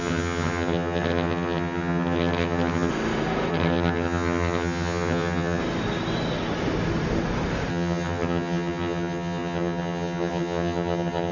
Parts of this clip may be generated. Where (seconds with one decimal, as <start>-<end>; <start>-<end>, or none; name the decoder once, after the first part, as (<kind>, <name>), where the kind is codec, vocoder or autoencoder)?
0.0-2.9 (vocoder, HiFi-GAN); 3.5-5.6; 7.7-11.3